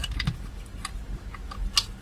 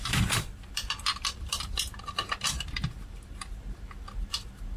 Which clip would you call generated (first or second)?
second